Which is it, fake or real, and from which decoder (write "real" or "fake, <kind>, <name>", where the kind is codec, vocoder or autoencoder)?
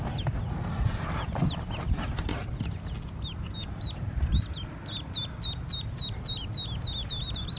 real